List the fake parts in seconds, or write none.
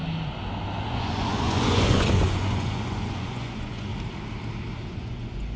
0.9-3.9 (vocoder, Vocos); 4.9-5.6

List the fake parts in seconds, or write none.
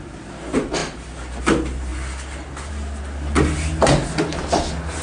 none